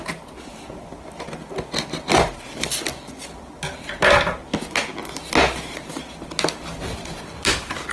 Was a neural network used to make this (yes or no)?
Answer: no